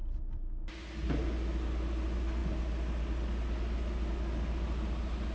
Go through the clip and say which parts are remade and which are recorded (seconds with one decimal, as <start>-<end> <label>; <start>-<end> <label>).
0.0-5.3 recorded